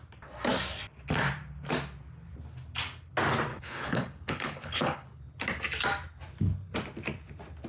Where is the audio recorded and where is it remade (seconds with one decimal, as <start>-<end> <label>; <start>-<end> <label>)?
0.0-3.5 recorded; 3.5-5.2 remade; 5.2-7.7 recorded